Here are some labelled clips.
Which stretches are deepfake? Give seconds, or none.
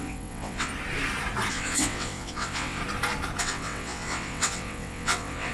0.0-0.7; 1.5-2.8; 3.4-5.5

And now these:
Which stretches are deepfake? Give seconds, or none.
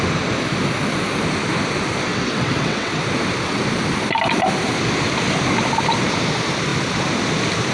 2.1-3.0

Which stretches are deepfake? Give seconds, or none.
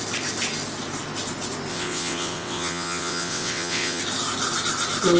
1.7-4.0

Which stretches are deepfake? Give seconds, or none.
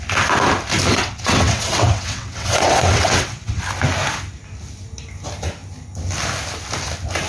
0.9-3.6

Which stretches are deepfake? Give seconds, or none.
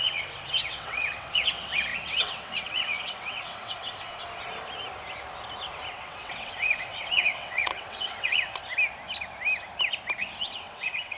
0.0-4.2; 5.9-8.6; 10.2-11.2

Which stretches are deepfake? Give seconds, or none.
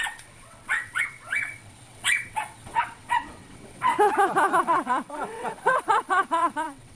0.0-3.9; 4.6-7.0